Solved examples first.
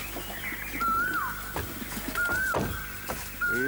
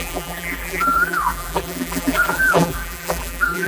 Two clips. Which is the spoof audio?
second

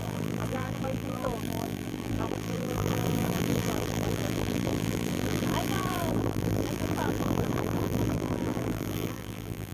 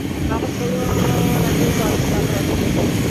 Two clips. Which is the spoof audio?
first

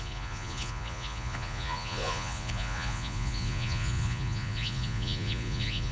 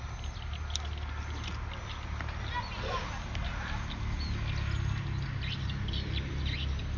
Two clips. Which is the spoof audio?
first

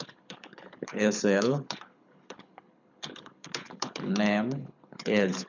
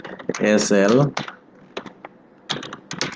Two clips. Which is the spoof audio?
first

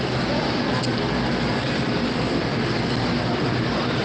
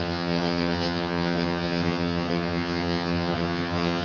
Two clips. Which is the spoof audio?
second